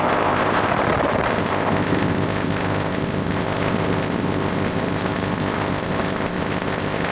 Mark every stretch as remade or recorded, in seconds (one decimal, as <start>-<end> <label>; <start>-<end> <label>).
0.0-0.7 remade; 0.7-1.3 recorded; 1.3-7.1 remade